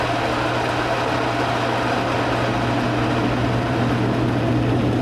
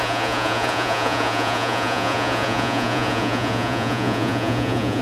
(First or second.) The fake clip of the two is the second